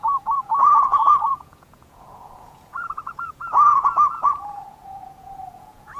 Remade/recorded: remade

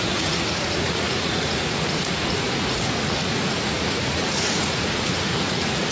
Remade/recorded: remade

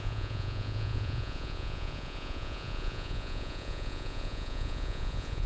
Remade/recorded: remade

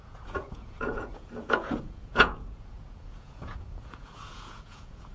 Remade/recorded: remade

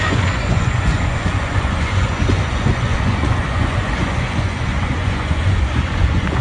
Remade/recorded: remade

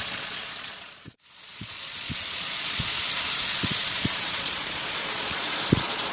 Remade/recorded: remade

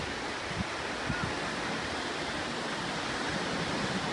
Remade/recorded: recorded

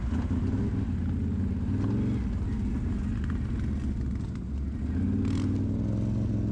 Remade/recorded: recorded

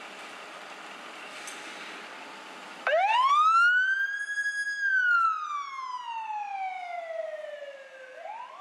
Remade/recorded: recorded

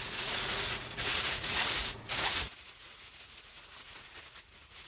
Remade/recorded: remade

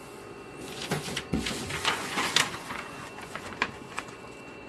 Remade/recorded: remade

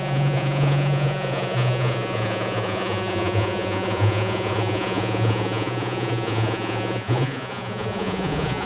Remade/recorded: remade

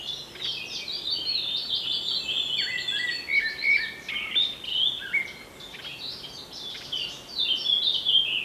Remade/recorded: recorded